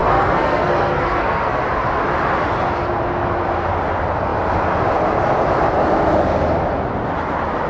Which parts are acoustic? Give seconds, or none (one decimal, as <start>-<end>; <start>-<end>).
1.6-7.7

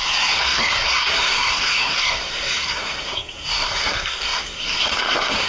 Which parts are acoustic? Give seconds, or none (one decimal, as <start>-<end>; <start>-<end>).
none

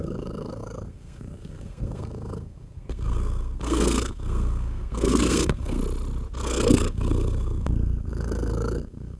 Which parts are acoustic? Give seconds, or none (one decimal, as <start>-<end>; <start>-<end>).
5.8-6.4

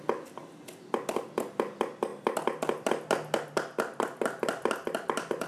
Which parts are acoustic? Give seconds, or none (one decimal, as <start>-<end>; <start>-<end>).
0.0-5.5

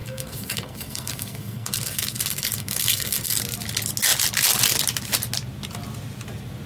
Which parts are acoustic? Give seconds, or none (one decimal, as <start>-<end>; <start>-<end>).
3.4-6.7

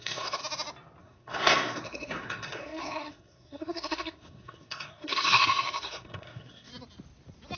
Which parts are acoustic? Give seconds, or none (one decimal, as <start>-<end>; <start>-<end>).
0.4-1.0; 6.7-7.6

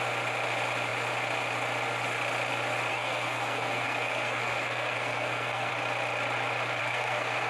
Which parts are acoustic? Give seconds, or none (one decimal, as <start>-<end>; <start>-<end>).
0.0-2.9; 5.7-6.8